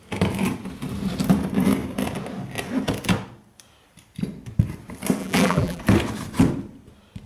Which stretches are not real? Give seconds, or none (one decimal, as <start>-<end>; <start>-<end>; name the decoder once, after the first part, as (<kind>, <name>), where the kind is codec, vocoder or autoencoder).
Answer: 5.2-5.8 (vocoder, BigVGAN v2)